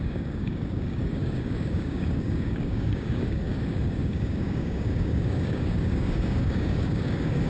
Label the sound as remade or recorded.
remade